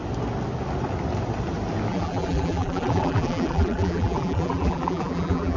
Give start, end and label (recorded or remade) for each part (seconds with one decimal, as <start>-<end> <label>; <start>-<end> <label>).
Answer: 0.0-1.9 recorded; 1.9-5.6 remade